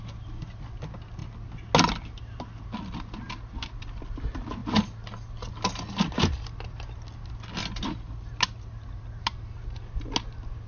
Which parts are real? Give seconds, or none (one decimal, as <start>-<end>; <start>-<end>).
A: 0.0-10.7